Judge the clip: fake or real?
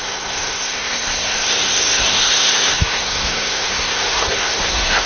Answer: fake